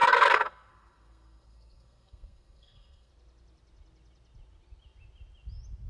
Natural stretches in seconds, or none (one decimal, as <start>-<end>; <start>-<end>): 3.1-5.9

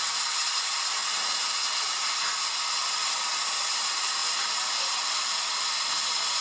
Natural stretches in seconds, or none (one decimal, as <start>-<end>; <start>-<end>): 0.0-6.4

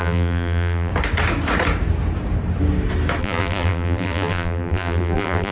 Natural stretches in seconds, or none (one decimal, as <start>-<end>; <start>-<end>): 0.9-3.2

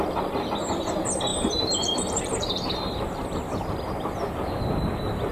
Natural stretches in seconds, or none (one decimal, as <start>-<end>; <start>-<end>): 0.0-1.3; 4.5-5.3

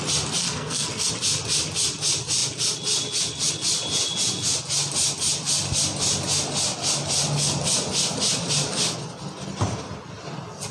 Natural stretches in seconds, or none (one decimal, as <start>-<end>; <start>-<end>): 0.0-0.4; 1.1-10.7

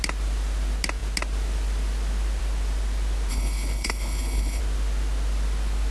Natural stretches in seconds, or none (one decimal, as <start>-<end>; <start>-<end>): 0.0-3.3; 4.6-5.9

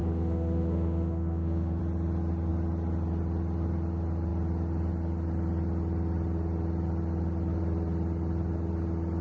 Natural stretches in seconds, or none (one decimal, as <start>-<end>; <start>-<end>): 1.8-9.2